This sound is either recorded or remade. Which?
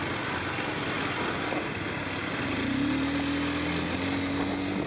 recorded